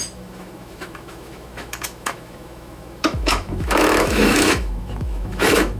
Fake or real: fake